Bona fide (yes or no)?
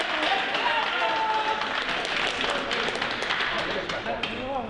yes